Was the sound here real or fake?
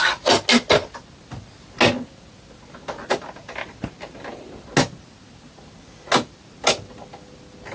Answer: real